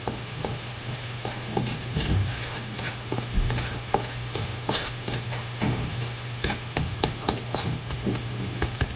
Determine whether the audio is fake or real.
fake